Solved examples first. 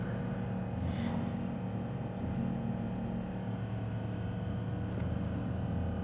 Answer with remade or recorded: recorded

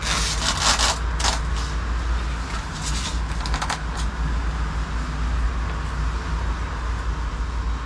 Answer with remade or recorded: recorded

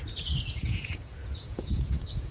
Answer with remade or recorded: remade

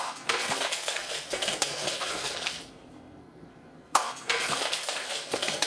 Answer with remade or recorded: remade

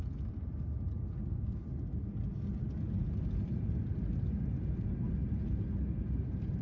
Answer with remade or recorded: recorded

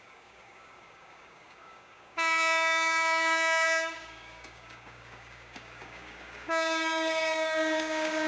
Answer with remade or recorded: remade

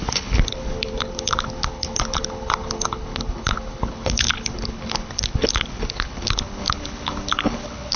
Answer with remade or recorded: remade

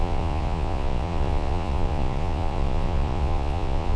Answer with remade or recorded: remade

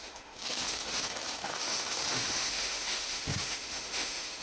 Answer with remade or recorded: remade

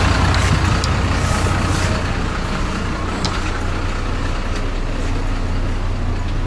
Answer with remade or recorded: recorded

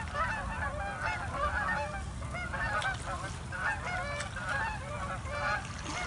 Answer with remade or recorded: recorded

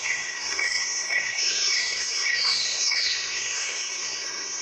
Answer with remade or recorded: remade